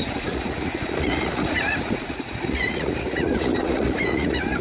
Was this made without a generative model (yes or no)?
no